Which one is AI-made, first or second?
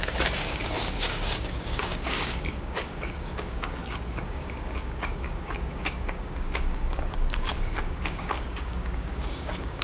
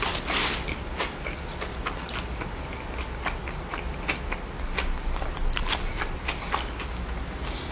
first